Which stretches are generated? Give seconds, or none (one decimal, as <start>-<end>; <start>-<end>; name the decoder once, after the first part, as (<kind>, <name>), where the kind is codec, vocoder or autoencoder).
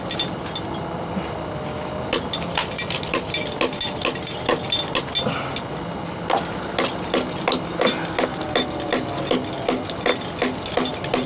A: none